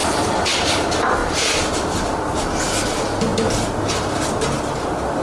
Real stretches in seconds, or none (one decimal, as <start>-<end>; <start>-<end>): 0.5-5.2